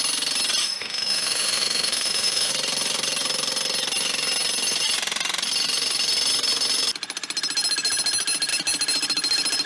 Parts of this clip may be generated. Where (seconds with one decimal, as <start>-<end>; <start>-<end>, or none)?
0.6-2.5